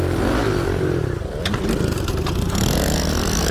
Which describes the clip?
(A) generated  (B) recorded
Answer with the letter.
B